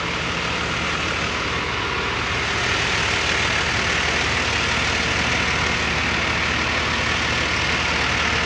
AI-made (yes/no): no